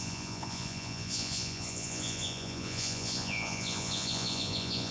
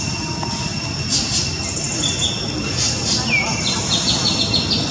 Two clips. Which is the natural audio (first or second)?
second